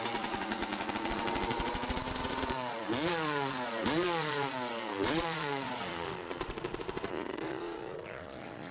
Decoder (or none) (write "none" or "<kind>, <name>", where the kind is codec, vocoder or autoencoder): vocoder, Vocos